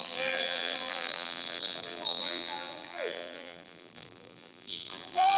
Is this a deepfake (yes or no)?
yes